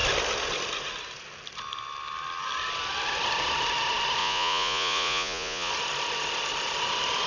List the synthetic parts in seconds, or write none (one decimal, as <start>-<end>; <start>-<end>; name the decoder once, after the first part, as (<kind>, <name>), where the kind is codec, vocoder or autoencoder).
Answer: 4.2-5.7 (vocoder, Vocos)